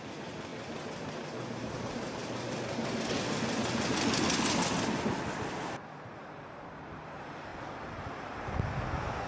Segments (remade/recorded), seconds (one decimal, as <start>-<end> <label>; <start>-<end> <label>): 0.0-2.2 remade; 2.2-5.6 recorded; 5.6-7.5 remade; 7.5-9.3 recorded